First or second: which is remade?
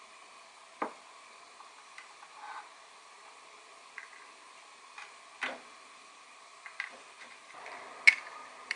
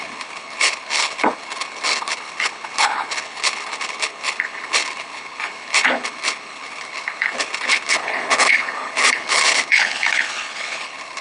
second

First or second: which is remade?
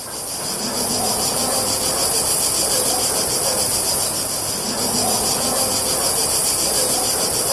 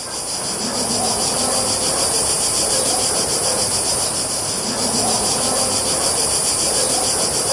second